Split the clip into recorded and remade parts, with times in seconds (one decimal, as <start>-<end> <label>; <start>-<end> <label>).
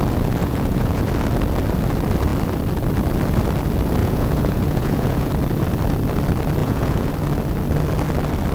0.0-0.4 recorded; 0.4-1.0 remade; 1.0-4.0 recorded; 4.0-5.3 remade; 5.3-6.6 recorded; 6.6-7.1 remade; 7.1-8.5 recorded